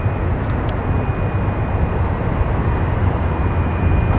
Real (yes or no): yes